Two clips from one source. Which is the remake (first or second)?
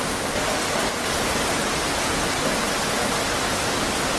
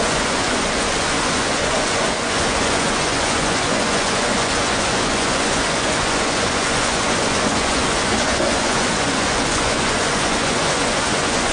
second